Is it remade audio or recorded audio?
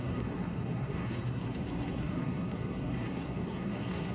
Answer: remade